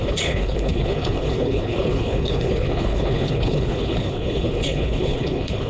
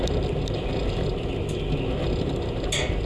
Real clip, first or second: second